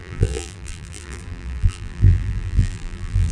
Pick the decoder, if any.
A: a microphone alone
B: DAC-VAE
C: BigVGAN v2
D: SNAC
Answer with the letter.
C